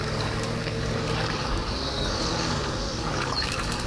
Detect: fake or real fake